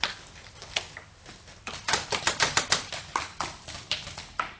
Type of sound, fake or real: real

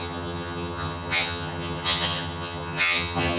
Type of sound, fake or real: fake